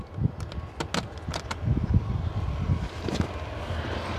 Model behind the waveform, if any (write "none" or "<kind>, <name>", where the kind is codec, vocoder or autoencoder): none